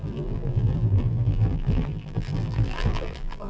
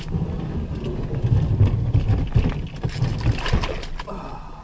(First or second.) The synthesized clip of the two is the first